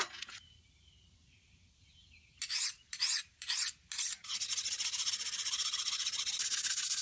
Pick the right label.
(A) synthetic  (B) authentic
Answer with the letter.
B